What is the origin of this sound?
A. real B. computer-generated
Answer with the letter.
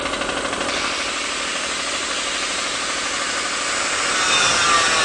A